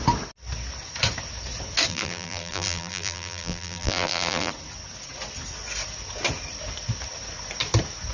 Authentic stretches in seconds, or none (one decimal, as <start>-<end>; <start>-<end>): 0.0-1.9; 4.5-8.1